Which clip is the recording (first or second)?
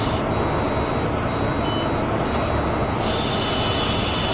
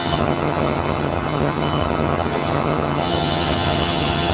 first